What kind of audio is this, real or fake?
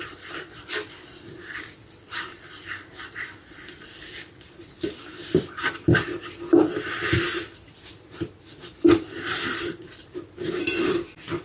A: fake